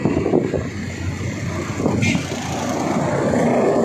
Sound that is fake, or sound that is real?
real